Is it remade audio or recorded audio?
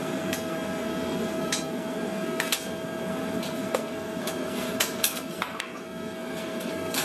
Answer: remade